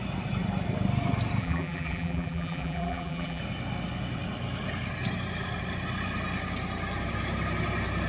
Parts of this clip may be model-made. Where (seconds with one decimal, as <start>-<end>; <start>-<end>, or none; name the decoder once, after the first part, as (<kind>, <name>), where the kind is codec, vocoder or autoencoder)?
1.4-3.4 (vocoder, BigVGAN v2)